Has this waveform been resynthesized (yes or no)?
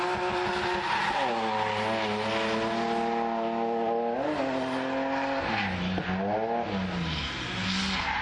no